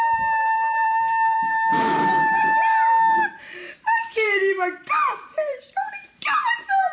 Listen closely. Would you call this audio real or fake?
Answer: fake